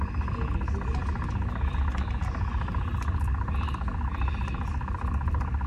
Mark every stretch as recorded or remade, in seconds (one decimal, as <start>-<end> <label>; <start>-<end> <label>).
0.0-5.7 recorded